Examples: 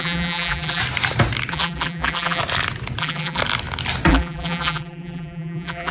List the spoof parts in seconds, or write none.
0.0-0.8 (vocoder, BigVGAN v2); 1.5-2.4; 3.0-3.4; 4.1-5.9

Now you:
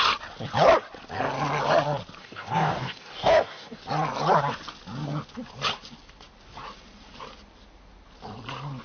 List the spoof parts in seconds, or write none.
2.2-3.8 (codec, DAC)